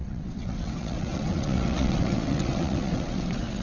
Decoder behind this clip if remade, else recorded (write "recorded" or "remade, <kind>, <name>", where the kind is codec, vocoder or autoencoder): remade, vocoder, WaveNeXt